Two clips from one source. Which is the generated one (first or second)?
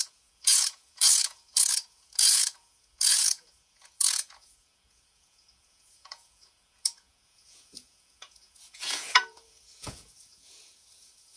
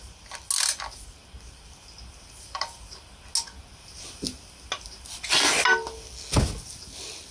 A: first